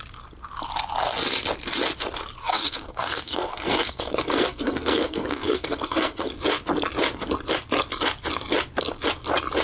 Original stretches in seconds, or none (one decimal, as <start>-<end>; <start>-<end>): 0.0-2.4; 6.3-9.6

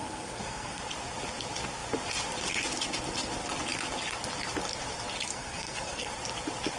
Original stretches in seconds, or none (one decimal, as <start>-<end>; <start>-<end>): 0.8-5.3; 6.1-6.8

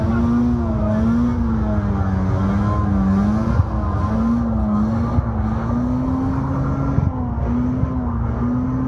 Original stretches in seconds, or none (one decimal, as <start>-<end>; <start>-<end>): 0.0-8.9